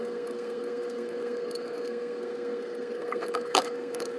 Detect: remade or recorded remade